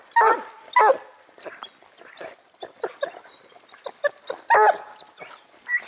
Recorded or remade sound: recorded